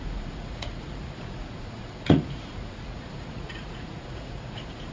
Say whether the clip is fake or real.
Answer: fake